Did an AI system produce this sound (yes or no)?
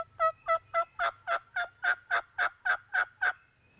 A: no